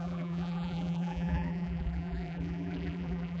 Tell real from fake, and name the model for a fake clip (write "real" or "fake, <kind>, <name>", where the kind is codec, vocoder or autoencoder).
fake, vocoder, BigVGAN v2